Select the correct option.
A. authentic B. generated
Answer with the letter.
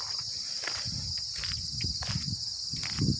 A